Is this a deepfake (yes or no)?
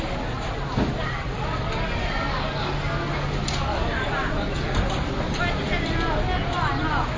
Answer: no